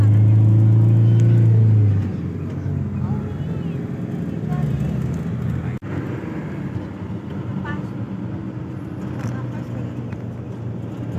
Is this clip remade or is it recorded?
recorded